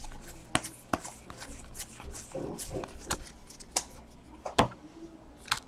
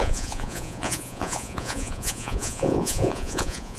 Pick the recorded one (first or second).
first